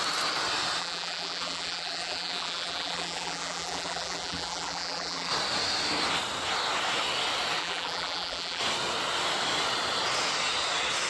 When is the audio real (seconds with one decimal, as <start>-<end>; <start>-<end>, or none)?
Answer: 0.0-0.8; 5.3-7.6; 8.6-11.1